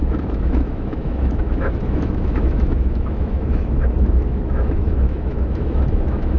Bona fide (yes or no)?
no